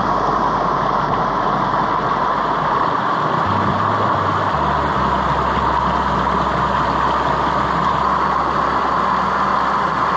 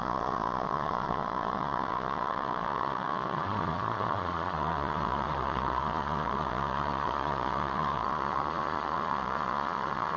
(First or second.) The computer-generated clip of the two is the second